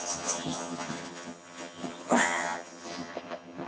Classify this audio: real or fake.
fake